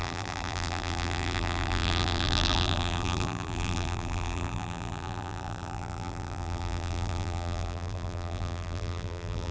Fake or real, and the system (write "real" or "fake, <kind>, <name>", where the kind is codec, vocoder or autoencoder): fake, vocoder, BigVGAN v2